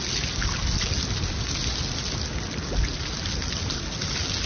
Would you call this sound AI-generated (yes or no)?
no